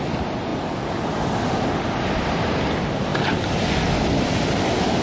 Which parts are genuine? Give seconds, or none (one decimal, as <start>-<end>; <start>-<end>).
0.0-5.0